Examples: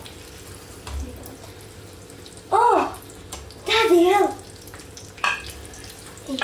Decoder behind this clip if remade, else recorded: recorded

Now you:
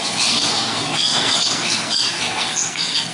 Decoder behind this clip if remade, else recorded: remade, codec, SNAC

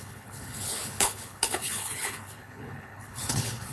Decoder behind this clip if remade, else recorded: remade, codec, HILCodec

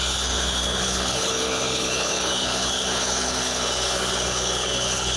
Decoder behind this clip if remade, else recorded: remade, codec, HILCodec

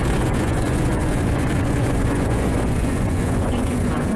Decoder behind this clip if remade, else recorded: remade, vocoder, Vocos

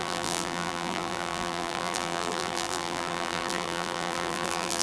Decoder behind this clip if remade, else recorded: remade, vocoder, BigVGAN v2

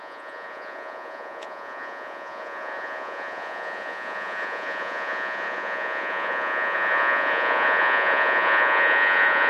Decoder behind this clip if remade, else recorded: remade, vocoder, Vocos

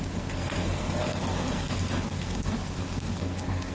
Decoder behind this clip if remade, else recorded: remade, codec, SNAC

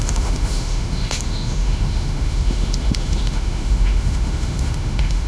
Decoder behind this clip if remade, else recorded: remade, autoencoder, DAC-VAE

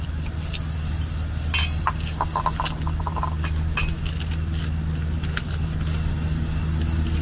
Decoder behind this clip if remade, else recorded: recorded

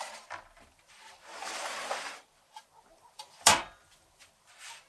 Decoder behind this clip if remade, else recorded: remade, vocoder, BigVGAN v2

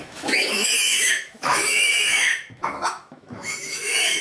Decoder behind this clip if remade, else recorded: remade, autoencoder, DAC-VAE